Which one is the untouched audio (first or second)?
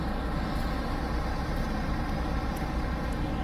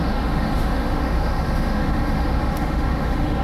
first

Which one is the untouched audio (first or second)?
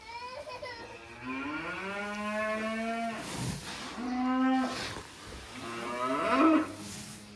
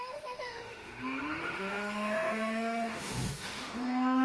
first